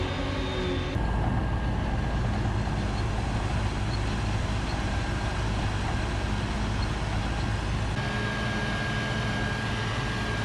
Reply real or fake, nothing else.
real